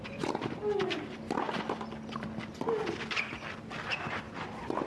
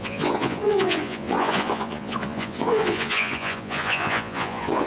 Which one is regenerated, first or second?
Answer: second